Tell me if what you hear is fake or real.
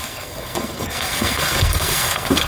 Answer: fake